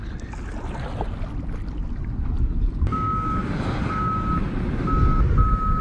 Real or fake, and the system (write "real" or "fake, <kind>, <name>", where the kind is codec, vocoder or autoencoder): real